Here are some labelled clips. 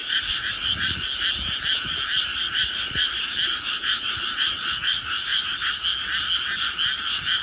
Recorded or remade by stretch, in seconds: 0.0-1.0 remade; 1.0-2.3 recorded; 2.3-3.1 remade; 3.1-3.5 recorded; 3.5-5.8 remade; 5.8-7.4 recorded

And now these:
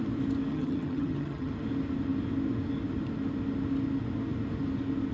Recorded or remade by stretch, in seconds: 0.0-0.5 recorded; 0.5-1.5 remade; 1.5-5.1 recorded